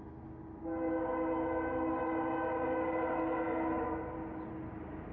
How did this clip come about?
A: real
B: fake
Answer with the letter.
A